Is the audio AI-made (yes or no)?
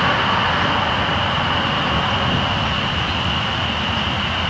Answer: no